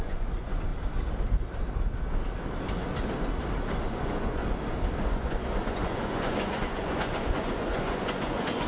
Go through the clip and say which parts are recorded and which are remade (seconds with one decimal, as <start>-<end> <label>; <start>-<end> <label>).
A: 0.0-0.7 remade; 0.7-3.9 recorded; 3.9-4.4 remade; 4.4-5.1 recorded; 5.1-8.7 remade

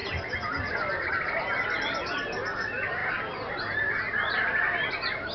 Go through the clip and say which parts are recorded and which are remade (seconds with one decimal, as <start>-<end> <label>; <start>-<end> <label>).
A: 0.0-5.3 recorded

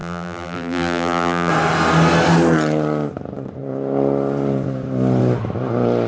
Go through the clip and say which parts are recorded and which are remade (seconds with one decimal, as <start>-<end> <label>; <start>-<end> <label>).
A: 0.0-1.5 remade; 1.5-6.1 recorded

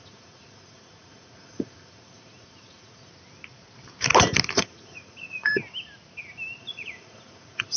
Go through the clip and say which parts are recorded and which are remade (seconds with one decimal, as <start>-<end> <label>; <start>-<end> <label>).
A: 0.0-3.1 remade; 3.1-4.5 recorded; 4.5-5.5 remade; 5.5-6.6 recorded; 6.6-7.8 remade

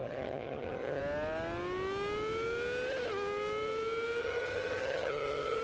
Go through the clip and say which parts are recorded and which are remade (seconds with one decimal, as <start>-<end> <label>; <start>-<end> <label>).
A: 0.0-1.0 remade; 1.0-4.2 recorded; 4.2-5.6 remade

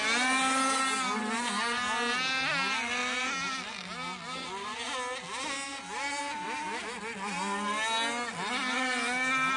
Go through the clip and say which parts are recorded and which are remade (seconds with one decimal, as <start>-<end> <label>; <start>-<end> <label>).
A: 0.0-9.6 recorded

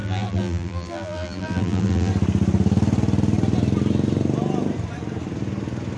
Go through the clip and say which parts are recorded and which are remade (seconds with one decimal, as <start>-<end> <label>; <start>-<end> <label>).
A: 0.0-2.1 remade; 2.1-6.0 recorded

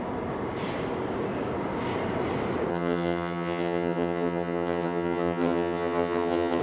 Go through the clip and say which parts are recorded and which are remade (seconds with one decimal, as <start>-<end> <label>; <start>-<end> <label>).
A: 0.0-2.7 recorded; 2.7-6.6 remade